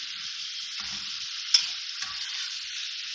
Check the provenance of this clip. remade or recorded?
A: recorded